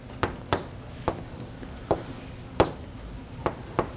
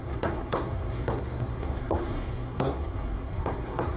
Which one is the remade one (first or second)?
second